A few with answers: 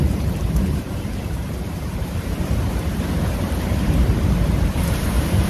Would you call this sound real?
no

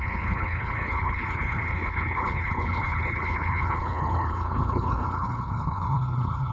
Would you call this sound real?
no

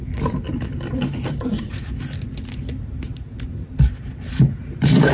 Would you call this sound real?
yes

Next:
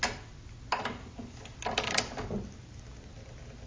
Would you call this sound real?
yes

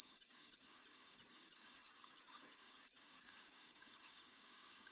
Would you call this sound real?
no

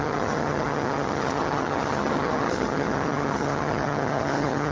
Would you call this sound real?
no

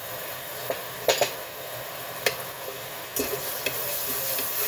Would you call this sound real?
yes